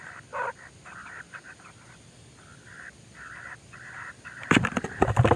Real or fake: fake